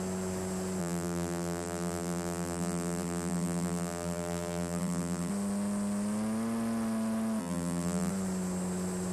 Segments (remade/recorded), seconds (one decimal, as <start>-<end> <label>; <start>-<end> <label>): 0.0-0.8 recorded; 0.8-5.3 remade; 5.3-7.4 recorded; 7.4-8.1 remade; 8.1-9.1 recorded